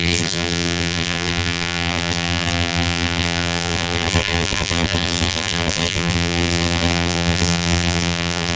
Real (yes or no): no